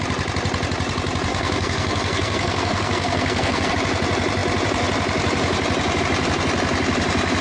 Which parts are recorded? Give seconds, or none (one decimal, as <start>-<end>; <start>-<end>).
0.0-1.3; 3.7-7.4